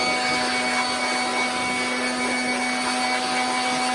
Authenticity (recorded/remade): recorded